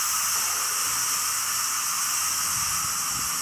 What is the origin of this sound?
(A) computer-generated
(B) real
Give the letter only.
B